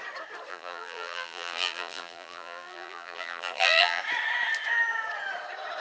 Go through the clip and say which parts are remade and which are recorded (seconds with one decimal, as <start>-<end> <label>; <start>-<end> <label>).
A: 0.0-0.5 recorded; 0.5-4.0 remade; 4.0-5.8 recorded